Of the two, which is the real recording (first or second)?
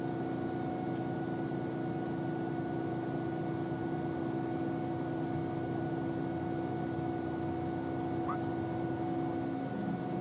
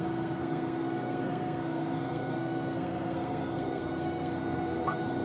first